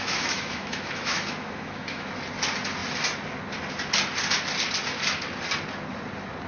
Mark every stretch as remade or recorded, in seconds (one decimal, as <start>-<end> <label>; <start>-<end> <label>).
0.0-2.1 remade; 2.1-6.5 recorded